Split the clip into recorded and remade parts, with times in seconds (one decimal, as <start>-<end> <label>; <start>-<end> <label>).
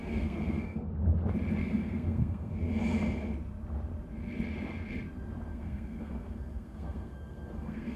0.0-0.9 remade; 0.9-1.6 recorded; 1.6-2.5 remade; 2.5-5.5 recorded; 5.5-8.0 remade